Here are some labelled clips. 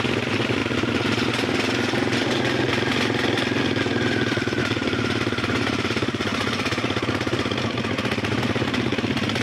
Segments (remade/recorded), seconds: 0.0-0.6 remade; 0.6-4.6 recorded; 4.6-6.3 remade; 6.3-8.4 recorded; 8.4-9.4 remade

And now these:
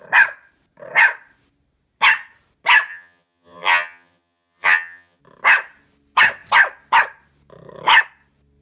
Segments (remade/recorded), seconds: 0.0-2.9 recorded; 2.9-5.2 remade; 5.2-8.6 recorded

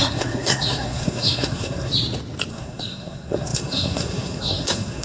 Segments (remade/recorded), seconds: 0.0-1.9 remade; 1.9-2.5 recorded; 2.5-5.0 remade

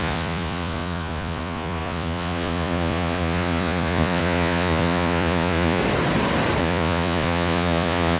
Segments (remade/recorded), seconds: 0.0-5.8 remade; 5.8-6.6 recorded; 6.6-8.2 remade

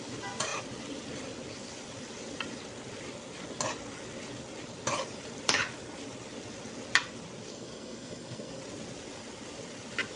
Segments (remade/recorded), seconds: 0.0-7.5 recorded; 7.5-8.6 remade; 8.6-10.2 recorded

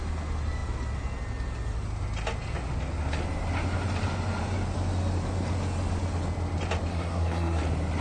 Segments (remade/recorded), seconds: 0.0-6.9 recorded; 6.9-7.6 remade; 7.6-8.0 recorded

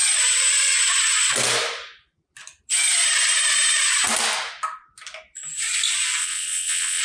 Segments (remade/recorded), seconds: 0.0-6.2 recorded; 6.2-7.0 remade

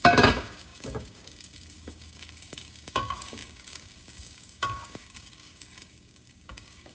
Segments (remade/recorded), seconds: 0.0-6.9 remade